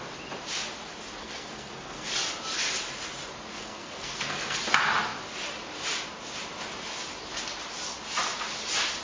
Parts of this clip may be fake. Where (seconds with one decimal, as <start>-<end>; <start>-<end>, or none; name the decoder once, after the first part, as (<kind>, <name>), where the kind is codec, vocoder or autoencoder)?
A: 1.2-2.1 (codec, SNAC); 3.6-4.6